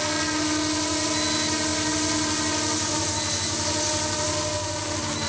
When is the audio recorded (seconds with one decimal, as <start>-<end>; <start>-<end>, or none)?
0.0-5.3